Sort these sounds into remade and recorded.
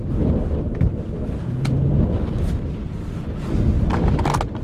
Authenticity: recorded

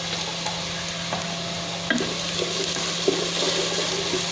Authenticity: recorded